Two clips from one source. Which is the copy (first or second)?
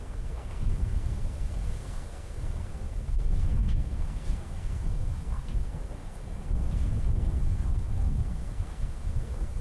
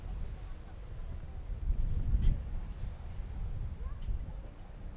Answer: first